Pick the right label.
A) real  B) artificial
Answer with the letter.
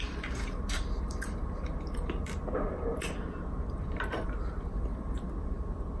B